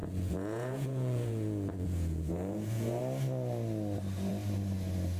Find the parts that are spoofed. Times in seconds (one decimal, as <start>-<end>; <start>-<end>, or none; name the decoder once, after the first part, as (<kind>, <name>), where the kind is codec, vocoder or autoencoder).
0.0-3.0 (vocoder, Vocos)